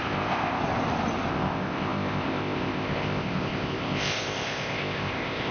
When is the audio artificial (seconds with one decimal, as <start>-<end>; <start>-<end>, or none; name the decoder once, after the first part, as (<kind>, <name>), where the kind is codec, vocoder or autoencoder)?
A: 0.0-0.6 (codec, ZipCodec); 1.3-5.5